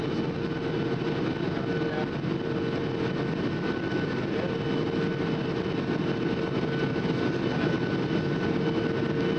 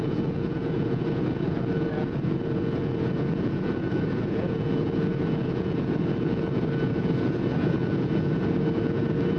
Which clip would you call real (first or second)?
first